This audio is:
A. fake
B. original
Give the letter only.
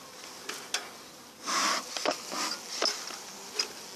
B